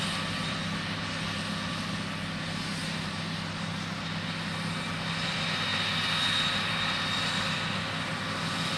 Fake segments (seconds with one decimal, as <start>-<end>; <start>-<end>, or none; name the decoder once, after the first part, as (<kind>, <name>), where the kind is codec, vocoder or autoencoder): none